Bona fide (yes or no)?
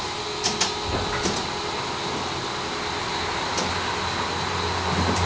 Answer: yes